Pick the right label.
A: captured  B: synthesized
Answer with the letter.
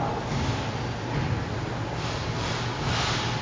A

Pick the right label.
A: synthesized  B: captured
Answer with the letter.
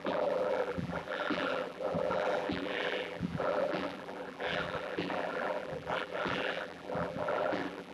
A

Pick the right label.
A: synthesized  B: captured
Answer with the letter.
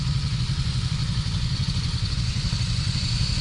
A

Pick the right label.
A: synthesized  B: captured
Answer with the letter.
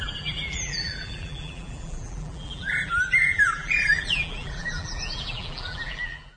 A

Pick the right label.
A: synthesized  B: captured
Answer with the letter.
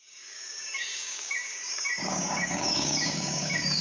A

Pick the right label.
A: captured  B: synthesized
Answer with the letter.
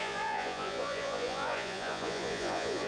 B